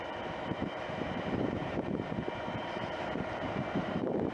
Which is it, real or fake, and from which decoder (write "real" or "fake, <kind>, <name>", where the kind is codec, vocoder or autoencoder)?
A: fake, vocoder, BigVGAN v2